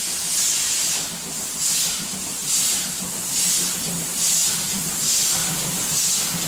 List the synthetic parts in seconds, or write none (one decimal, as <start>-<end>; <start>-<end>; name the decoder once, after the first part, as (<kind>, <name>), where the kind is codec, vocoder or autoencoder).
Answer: none